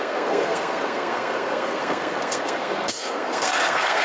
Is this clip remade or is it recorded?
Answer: remade